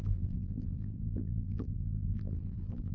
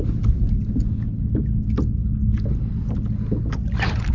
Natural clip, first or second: second